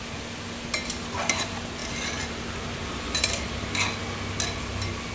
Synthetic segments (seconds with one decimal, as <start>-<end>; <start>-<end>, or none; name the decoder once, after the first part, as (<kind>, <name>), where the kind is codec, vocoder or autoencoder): none

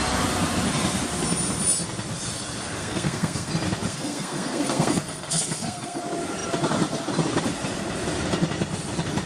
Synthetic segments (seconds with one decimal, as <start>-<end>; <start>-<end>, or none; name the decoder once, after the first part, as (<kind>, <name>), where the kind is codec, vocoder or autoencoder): 2.8-3.5 (codec, SNAC); 3.9-6.0

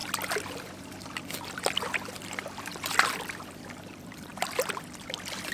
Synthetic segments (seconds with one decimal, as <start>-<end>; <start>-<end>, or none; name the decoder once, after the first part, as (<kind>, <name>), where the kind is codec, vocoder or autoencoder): 0.0-4.3 (vocoder, BigVGAN v2); 5.0-5.5